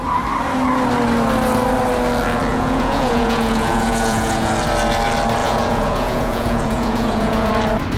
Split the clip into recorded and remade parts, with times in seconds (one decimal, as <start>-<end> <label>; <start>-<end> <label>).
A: 0.0-2.5 recorded; 2.5-4.5 remade; 4.5-5.4 recorded; 5.4-7.5 remade; 7.5-8.0 recorded